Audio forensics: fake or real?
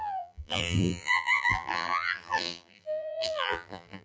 fake